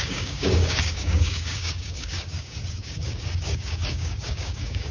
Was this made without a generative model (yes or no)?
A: no